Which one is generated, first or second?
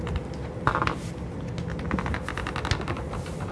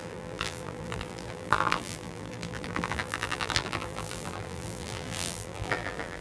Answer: second